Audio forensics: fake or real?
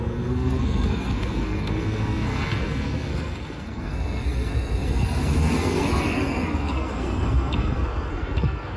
fake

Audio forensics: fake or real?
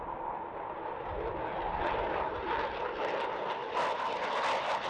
real